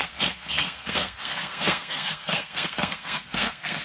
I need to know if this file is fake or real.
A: fake